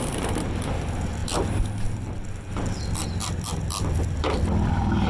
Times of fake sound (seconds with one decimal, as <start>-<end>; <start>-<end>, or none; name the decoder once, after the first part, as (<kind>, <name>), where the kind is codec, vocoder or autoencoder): none